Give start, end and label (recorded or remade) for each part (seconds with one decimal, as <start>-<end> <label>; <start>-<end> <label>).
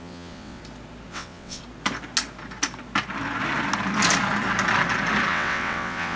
0.0-0.6 remade; 0.6-1.1 recorded; 1.1-1.6 remade; 1.6-5.3 recorded; 5.3-6.2 remade